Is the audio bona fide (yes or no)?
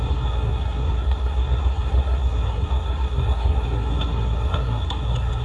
no